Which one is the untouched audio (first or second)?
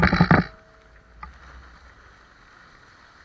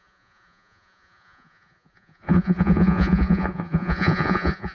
first